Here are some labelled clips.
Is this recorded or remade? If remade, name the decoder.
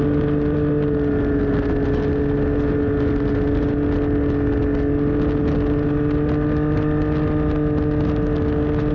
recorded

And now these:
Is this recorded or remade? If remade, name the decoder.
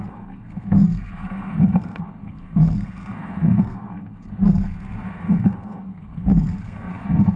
remade, codec, SNAC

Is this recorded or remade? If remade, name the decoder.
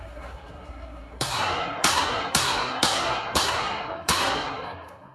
remade, codec, SNAC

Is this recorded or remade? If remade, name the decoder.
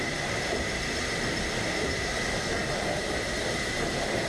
recorded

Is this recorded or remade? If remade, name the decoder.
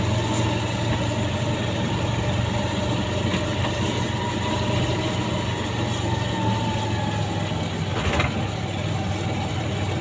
recorded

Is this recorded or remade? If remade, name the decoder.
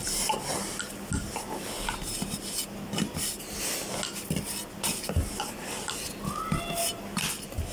recorded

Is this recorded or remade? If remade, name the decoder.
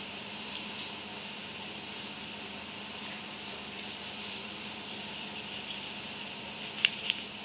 recorded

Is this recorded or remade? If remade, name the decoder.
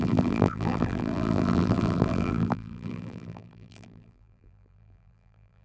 remade, vocoder, BigVGAN v2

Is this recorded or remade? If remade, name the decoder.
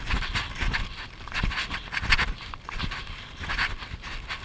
recorded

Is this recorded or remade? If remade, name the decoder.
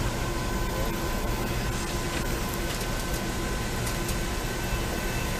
recorded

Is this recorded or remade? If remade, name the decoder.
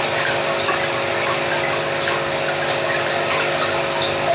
recorded